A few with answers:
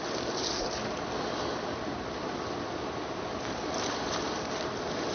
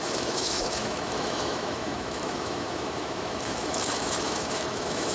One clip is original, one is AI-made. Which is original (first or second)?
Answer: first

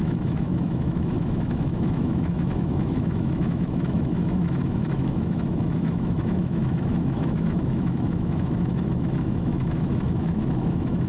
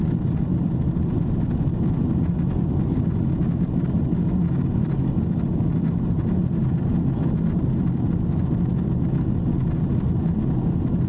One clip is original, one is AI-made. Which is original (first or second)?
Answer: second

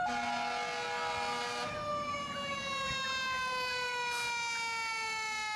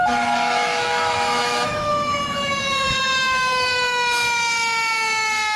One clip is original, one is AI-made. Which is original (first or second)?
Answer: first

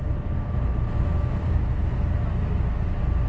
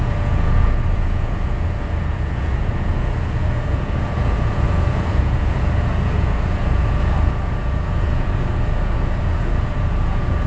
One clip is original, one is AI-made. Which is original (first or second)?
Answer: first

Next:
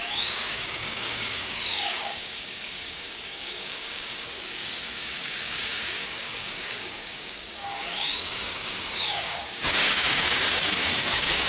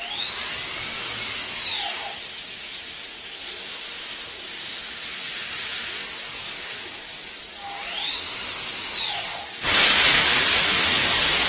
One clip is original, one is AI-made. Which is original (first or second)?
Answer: second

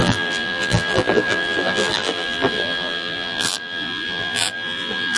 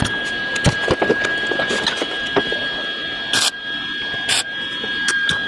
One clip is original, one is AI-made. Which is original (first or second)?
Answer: second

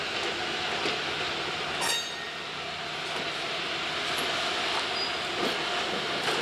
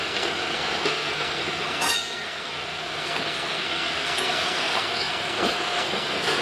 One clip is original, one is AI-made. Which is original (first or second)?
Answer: first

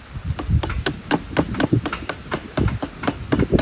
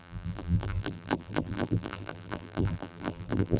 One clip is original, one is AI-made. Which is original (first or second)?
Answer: first